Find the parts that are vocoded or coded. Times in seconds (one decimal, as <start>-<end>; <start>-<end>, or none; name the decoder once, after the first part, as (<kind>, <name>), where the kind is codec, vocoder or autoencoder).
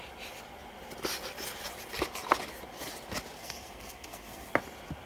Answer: 3.4-4.5 (codec, SNAC)